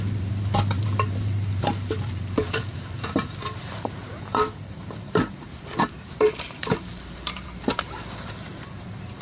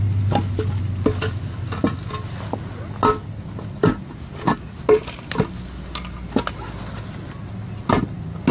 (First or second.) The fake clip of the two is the first